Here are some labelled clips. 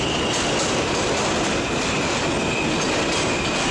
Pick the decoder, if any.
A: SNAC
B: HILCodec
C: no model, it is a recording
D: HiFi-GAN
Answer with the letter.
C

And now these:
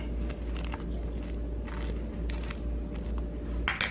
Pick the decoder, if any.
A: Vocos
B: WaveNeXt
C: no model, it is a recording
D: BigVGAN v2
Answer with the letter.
C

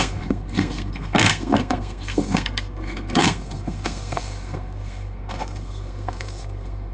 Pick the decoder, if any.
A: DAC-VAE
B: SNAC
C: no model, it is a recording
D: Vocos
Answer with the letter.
B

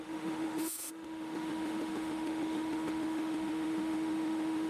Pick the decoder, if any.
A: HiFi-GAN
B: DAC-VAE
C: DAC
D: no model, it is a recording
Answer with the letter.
B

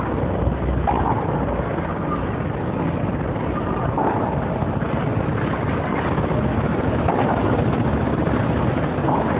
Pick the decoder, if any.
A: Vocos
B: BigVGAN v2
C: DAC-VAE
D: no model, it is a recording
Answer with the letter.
D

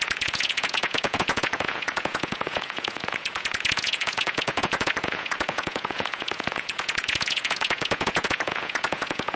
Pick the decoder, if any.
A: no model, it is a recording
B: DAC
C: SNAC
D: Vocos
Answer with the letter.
D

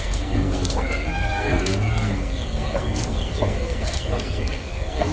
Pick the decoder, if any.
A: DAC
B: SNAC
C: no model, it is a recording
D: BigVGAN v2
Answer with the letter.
B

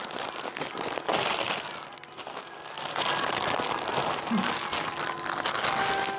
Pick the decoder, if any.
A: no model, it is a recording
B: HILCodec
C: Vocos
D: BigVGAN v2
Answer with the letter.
A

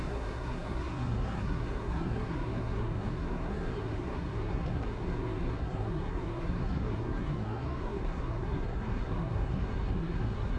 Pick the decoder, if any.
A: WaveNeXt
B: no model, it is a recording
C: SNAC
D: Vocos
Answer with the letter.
C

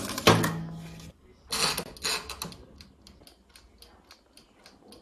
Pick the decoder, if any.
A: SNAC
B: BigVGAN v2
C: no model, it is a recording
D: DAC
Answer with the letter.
C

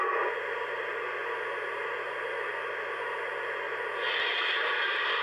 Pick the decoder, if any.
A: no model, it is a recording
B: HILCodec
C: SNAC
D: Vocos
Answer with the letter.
A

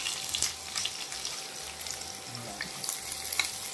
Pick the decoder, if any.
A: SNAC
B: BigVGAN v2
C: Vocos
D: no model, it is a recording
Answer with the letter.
D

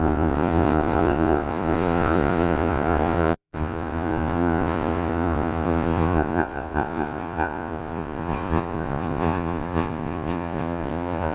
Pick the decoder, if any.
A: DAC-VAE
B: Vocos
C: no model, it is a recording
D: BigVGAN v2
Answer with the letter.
B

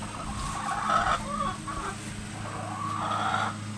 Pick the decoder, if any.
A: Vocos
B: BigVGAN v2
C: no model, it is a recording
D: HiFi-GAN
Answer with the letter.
C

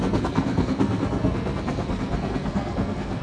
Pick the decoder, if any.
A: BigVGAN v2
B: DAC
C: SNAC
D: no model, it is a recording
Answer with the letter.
C